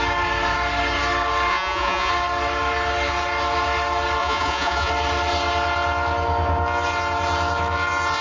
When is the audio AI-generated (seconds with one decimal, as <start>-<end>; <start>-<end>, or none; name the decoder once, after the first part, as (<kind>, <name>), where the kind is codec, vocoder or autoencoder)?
1.5-2.1 (vocoder, Vocos); 4.2-4.9